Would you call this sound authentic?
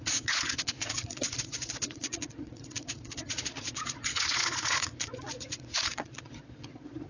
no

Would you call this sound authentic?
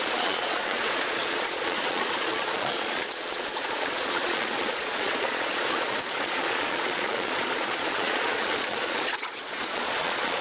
no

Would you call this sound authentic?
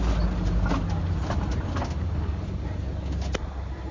yes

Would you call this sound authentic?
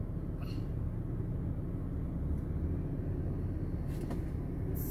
yes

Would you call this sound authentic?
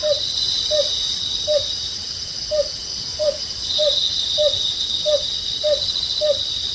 yes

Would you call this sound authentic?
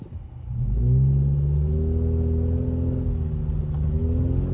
yes